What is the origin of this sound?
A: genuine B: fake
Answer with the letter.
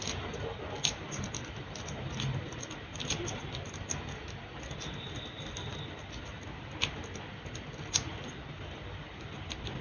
A